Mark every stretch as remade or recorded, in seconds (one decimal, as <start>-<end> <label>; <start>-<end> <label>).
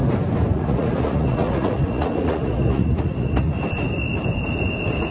0.0-0.5 recorded; 0.5-3.6 remade; 3.6-5.1 recorded